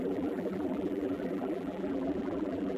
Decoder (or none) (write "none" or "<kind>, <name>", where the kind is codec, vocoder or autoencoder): vocoder, BigVGAN v2